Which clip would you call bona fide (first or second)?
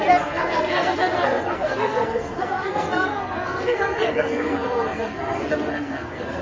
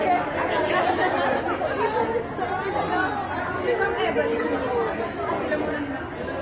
second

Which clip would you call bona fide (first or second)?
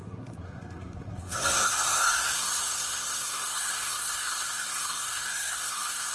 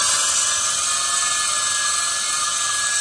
second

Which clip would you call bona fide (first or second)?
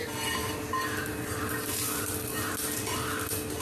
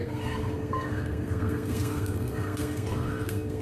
first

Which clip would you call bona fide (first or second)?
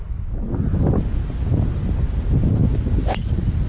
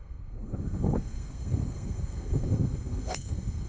first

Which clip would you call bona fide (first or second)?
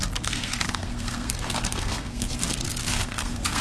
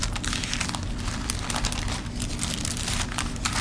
second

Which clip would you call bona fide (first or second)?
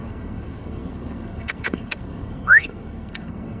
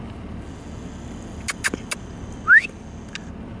second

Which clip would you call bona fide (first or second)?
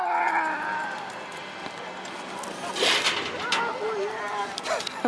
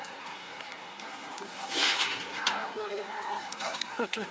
first